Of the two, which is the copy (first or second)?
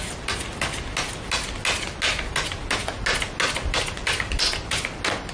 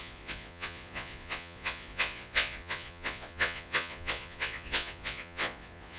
second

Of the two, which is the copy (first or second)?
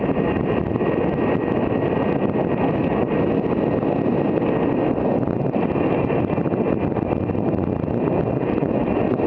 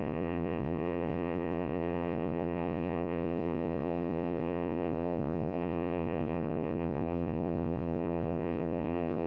second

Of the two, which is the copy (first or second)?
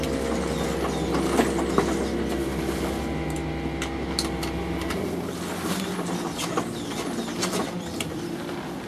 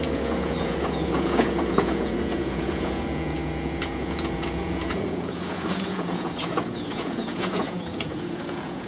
second